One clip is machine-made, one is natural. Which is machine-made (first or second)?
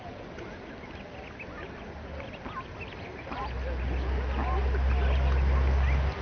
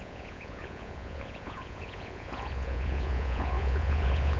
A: second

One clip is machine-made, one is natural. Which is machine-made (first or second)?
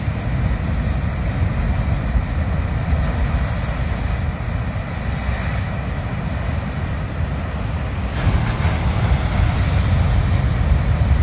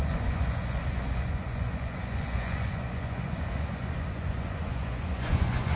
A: second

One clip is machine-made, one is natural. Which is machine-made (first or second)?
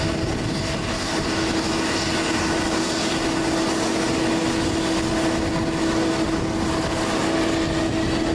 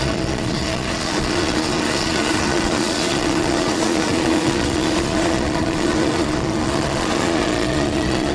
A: second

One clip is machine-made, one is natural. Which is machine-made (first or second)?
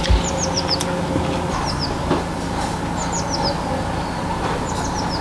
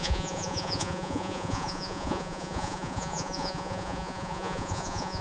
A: second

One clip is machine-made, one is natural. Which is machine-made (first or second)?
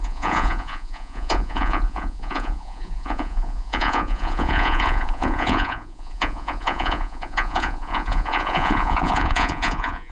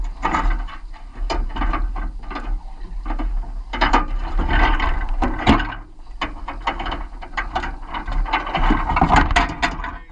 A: first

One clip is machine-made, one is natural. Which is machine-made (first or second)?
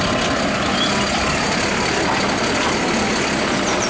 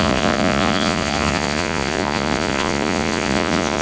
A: second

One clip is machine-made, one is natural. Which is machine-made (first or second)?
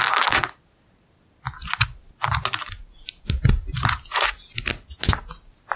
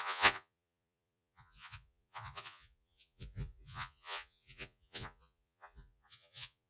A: second